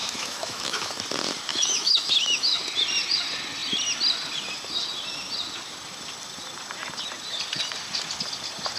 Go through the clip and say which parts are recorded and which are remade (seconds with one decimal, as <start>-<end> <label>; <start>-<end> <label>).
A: 0.0-1.0 remade; 1.0-1.5 recorded; 1.5-2.6 remade; 2.6-8.8 recorded